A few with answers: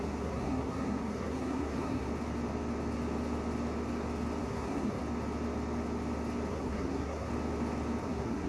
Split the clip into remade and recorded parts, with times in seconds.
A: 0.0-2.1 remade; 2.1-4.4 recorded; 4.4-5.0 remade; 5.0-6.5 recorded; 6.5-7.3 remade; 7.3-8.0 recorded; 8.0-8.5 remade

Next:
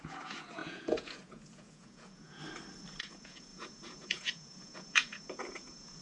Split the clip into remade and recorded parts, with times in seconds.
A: 0.0-2.4 remade; 2.4-3.0 recorded; 3.0-6.0 remade